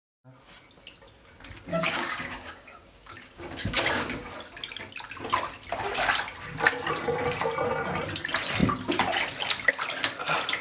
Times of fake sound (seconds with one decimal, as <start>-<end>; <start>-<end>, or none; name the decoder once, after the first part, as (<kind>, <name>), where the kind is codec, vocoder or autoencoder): 1.7-4.3 (codec, DAC)

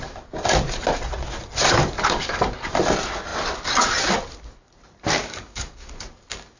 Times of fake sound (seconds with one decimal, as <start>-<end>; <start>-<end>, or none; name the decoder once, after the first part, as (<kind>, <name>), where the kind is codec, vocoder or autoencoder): 1.8-2.4 (codec, DAC); 5.2-5.9

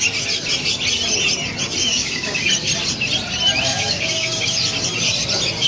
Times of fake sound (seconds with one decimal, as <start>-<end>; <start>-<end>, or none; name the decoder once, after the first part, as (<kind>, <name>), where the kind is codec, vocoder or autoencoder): 1.8-2.4 (codec, DAC); 3.7-4.4

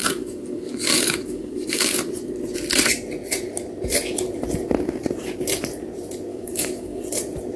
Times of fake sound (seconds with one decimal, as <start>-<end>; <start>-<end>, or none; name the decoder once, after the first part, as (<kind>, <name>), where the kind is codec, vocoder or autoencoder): 0.0-2.0 (codec, DAC); 6.3-7.0